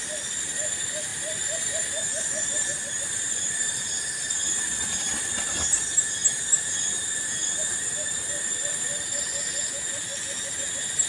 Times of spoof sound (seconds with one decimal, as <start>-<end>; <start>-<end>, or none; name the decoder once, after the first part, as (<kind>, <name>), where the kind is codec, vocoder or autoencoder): none